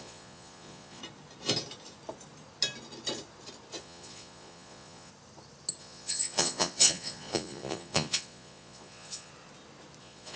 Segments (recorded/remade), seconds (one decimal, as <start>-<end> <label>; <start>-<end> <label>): 0.0-1.0 remade; 1.0-3.8 recorded; 3.8-5.1 remade; 5.1-5.8 recorded; 5.8-9.3 remade; 9.3-10.0 recorded; 10.0-10.4 remade